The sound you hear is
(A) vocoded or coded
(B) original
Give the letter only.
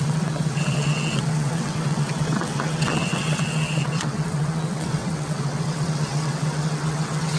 A